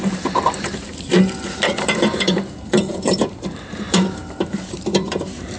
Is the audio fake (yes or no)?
yes